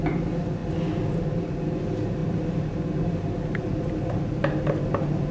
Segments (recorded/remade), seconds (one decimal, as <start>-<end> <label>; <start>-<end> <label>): 0.0-5.3 recorded